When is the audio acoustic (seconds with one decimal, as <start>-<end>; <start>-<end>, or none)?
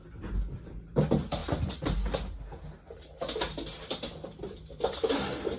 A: 0.0-5.6